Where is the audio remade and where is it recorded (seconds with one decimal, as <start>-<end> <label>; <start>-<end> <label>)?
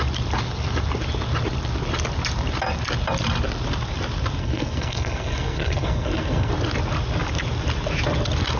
0.0-4.4 recorded; 4.4-6.5 remade; 6.5-8.6 recorded